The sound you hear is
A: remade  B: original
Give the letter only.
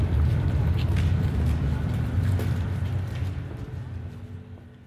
B